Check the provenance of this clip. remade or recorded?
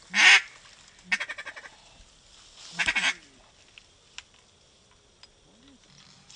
recorded